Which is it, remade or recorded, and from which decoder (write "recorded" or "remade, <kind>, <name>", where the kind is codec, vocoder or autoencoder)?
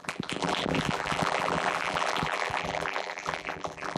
remade, vocoder, BigVGAN v2